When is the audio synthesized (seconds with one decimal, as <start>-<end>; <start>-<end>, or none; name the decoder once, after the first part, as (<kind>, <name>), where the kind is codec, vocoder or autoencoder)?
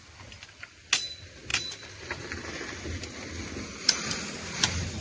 1.5-3.0 (vocoder, BigVGAN v2)